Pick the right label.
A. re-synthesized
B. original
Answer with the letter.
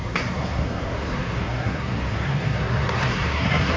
A